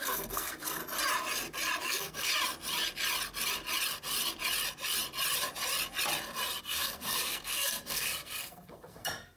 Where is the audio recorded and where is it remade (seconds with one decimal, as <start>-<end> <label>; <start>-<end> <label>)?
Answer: 0.0-0.8 remade; 0.8-1.8 recorded; 1.8-2.3 remade; 2.3-6.6 recorded; 6.6-9.4 remade

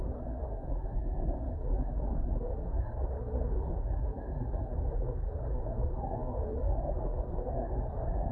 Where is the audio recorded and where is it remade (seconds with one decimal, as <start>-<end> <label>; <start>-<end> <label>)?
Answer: 0.0-8.3 remade

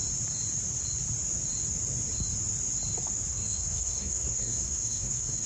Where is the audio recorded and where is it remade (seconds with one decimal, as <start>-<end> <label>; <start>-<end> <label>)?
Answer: 0.0-3.3 recorded; 3.3-5.5 remade

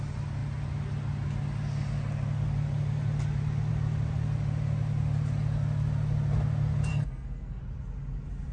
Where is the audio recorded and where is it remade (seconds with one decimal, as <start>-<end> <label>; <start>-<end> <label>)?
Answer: 0.0-6.9 recorded; 6.9-7.6 remade; 7.6-8.5 recorded

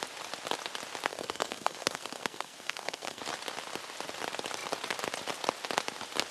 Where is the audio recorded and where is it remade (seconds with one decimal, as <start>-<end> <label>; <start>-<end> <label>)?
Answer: 0.0-1.1 recorded; 1.1-3.2 remade; 3.2-6.3 recorded

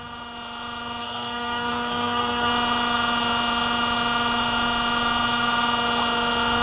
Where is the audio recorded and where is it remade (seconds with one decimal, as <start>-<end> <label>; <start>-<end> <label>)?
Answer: 0.0-1.0 recorded; 1.0-2.5 remade; 2.5-6.6 recorded

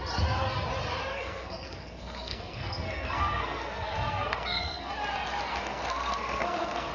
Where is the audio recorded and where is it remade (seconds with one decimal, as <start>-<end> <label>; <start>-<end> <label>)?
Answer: 0.0-1.1 recorded; 1.1-4.9 remade; 4.9-5.5 recorded; 5.5-6.9 remade